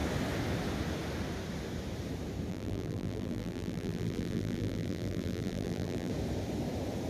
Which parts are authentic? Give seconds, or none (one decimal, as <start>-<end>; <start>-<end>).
0.0-2.5; 6.1-7.1